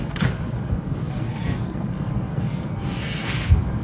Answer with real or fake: fake